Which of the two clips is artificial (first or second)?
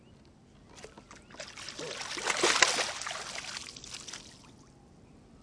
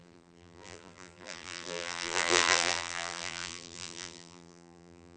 second